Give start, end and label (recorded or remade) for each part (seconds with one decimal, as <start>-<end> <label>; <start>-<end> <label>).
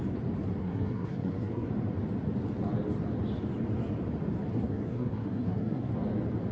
0.0-0.6 recorded; 0.6-1.7 remade; 1.7-4.5 recorded; 4.5-5.9 remade; 5.9-6.5 recorded